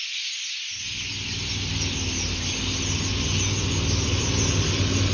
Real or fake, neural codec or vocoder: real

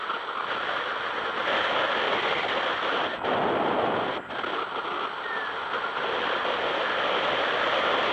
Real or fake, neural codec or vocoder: real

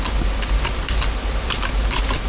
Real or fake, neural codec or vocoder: real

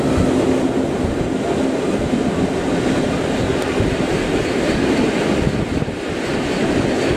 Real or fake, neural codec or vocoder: real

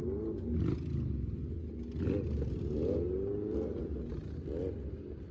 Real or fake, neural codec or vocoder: real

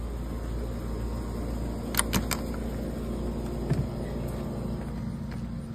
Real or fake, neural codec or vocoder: real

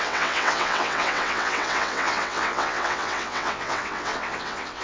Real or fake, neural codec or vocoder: fake, vocoder, WaveNeXt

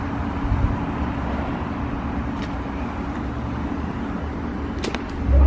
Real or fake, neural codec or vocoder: real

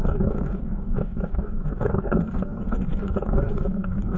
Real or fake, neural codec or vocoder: fake, codec, DAC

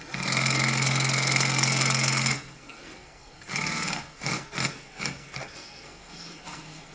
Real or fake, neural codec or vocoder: fake, codec, SNAC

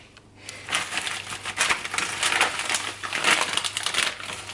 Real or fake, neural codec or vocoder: real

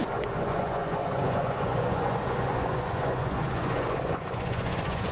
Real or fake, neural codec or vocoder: fake, vocoder, Vocos